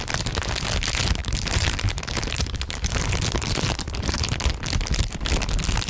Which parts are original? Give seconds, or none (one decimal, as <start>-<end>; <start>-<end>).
0.0-1.2; 4.2-5.9